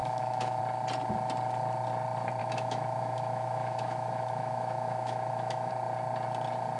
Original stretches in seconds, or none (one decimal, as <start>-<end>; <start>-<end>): 0.6-2.4; 5.7-6.8

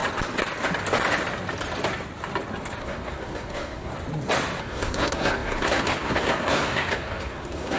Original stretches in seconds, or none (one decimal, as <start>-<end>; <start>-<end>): 0.0-2.8; 3.9-4.6

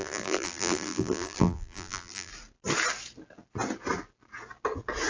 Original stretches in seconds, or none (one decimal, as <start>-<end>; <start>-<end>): 2.3-5.1

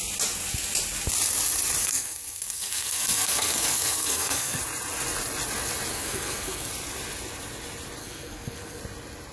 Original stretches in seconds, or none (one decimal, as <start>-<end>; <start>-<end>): 0.0-1.8; 4.6-5.9; 6.7-8.0; 8.8-9.3

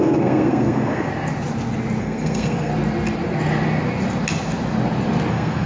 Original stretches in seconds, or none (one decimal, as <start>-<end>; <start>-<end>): 1.1-2.0; 2.7-5.3